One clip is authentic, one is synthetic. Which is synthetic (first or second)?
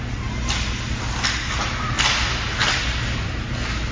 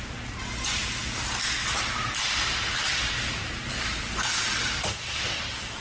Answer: second